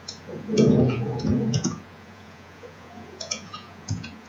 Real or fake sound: fake